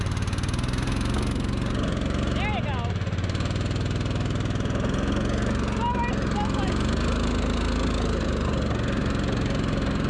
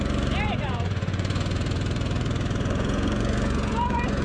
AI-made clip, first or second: second